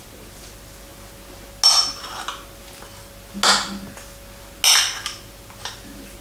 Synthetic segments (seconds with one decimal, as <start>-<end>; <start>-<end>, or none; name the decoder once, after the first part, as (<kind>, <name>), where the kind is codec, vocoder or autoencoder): none